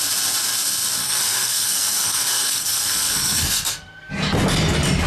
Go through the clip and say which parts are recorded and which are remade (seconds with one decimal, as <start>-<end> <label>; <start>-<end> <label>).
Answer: 0.0-1.0 recorded; 1.0-4.1 remade; 4.1-5.1 recorded